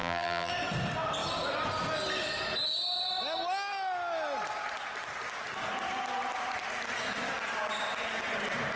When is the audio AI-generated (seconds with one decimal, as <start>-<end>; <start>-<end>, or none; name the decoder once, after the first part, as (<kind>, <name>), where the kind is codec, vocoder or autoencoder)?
0.0-0.5 (vocoder, BigVGAN v2)